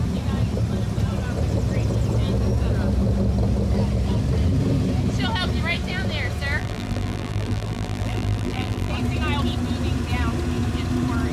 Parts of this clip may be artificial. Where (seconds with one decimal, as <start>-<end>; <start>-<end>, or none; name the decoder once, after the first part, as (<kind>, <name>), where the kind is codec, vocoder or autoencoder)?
6.6-8.9 (vocoder, BigVGAN v2)